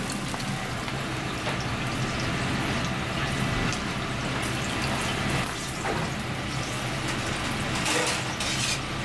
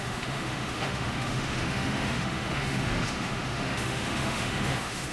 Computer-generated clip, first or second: second